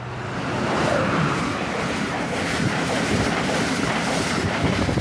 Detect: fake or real fake